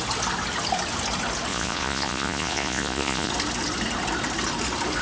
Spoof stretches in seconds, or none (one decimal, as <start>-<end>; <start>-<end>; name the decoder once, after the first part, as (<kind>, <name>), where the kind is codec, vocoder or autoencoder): 1.5-3.3 (vocoder, Vocos)